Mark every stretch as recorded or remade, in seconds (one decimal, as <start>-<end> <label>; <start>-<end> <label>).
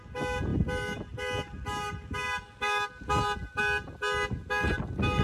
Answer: 0.0-5.2 recorded